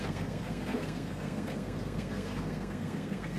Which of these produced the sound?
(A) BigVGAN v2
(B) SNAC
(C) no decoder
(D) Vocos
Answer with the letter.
B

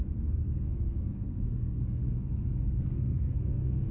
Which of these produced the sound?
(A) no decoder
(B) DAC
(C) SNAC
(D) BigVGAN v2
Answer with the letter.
C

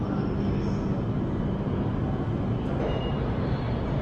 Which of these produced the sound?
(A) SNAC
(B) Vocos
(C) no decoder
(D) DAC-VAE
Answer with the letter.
C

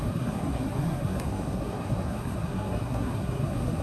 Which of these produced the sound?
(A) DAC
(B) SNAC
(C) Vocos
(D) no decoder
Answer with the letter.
B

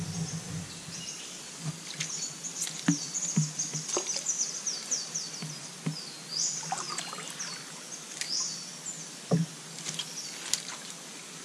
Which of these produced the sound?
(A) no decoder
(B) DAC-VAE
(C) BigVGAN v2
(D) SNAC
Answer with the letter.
A